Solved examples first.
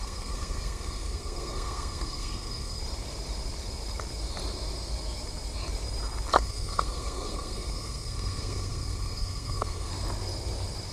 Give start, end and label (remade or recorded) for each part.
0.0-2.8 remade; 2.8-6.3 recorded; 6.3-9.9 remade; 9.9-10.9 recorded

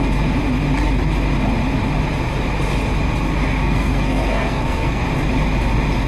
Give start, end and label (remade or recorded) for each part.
0.0-3.6 recorded; 3.6-5.0 remade; 5.0-6.1 recorded

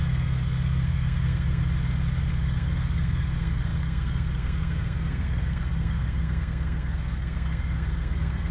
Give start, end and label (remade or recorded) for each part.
0.0-1.6 remade; 1.6-2.3 recorded; 2.3-8.5 remade

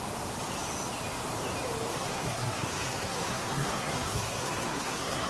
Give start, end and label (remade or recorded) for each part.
0.0-1.9 recorded; 1.9-5.3 remade

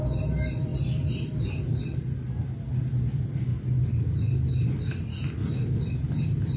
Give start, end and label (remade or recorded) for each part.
0.0-6.6 recorded

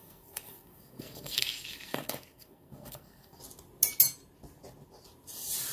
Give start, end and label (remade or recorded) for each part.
0.0-3.4 remade; 3.4-5.7 recorded

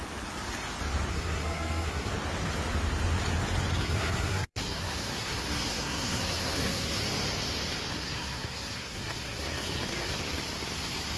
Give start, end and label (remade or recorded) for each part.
0.0-1.1 recorded; 1.1-2.1 remade; 2.1-3.8 recorded; 3.8-7.0 remade; 7.0-7.9 recorded; 7.9-10.2 remade; 10.2-11.2 recorded

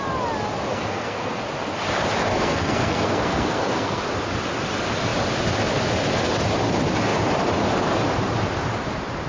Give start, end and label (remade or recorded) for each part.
0.0-0.7 recorded; 0.7-1.4 remade; 1.4-2.3 recorded; 2.3-4.0 remade; 4.0-9.3 recorded